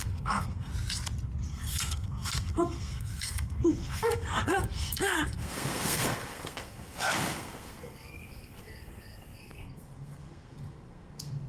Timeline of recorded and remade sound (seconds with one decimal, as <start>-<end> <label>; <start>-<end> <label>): 0.0-0.7 remade; 0.7-1.5 recorded; 1.5-11.5 remade

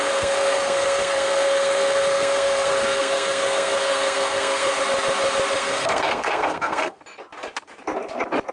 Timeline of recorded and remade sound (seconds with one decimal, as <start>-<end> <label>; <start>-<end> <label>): 0.0-4.8 remade; 4.8-5.6 recorded; 5.6-7.0 remade; 7.0-8.5 recorded

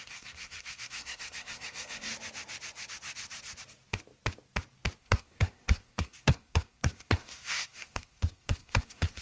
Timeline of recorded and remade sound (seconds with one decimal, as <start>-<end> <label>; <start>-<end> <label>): 0.0-2.1 remade; 2.1-5.0 recorded; 5.0-9.2 remade

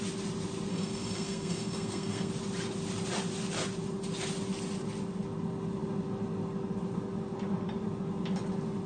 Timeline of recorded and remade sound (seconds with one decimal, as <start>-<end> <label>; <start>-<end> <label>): 0.0-0.7 recorded; 0.7-2.3 remade; 2.3-8.9 recorded

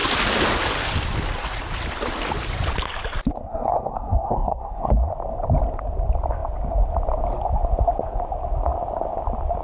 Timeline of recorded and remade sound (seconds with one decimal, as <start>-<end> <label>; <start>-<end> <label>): 0.0-3.3 recorded; 3.3-4.9 remade; 4.9-9.6 recorded